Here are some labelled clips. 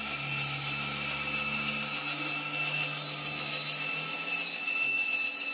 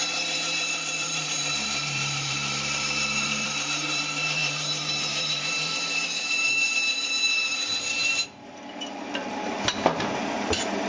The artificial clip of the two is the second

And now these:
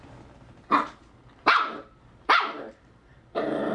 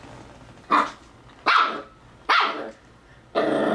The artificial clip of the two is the first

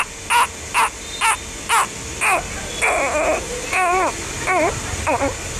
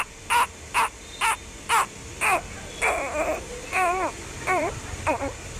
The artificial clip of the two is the second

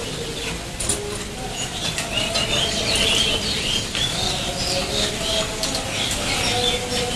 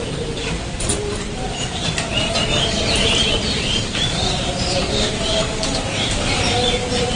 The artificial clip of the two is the second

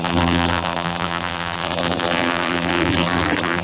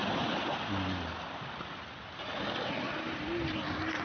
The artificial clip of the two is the first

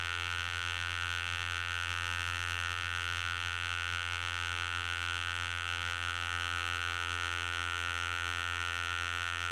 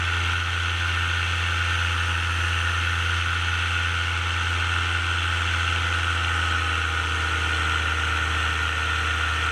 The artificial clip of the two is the first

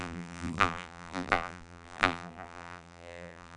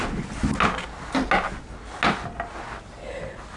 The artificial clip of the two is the first